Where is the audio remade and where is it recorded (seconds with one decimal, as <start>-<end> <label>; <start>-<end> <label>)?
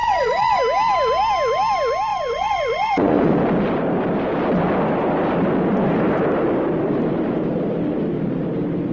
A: 0.0-0.6 remade; 0.6-2.1 recorded; 2.1-3.3 remade; 3.3-8.9 recorded